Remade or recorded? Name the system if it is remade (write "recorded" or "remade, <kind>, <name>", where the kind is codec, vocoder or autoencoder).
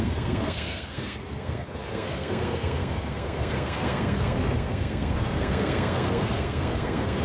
remade, codec, SNAC